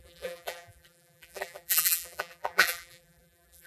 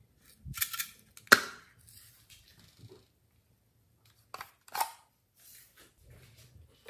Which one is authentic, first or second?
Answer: second